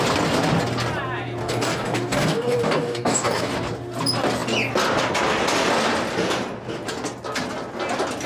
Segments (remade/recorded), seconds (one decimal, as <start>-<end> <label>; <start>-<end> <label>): 0.0-1.4 recorded; 1.4-3.5 remade; 3.5-8.3 recorded